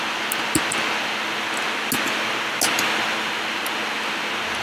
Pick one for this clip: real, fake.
real